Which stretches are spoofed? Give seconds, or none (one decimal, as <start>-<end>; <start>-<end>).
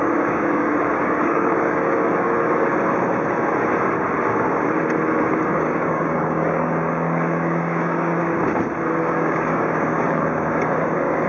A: 0.0-2.7; 5.5-8.2; 9.0-11.3